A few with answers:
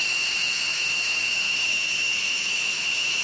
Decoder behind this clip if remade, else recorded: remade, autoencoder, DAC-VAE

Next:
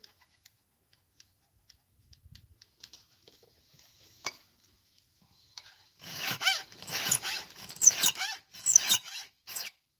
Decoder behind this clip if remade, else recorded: remade, autoencoder, DAC-VAE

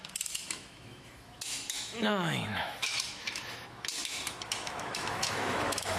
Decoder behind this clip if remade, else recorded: remade, autoencoder, DAC-VAE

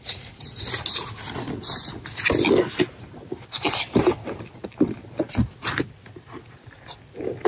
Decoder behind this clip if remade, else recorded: recorded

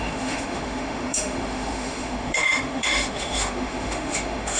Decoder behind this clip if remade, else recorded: remade, autoencoder, DAC-VAE